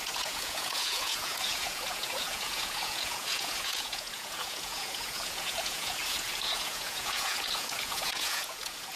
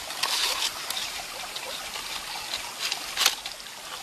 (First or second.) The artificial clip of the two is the first